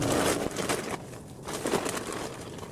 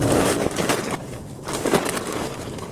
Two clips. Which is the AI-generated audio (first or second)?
second